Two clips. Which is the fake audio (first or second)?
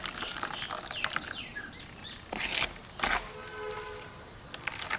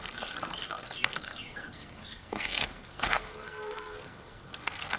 second